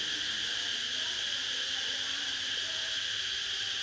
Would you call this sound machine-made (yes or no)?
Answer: no